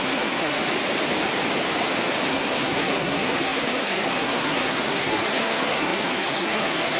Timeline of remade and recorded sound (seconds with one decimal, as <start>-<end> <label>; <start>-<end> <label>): 0.0-0.6 remade; 0.6-2.3 recorded; 2.3-7.0 remade